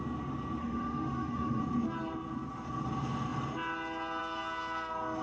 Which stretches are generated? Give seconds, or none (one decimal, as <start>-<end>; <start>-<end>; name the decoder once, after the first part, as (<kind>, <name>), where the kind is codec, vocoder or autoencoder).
0.6-1.6 (autoencoder, DAC-VAE)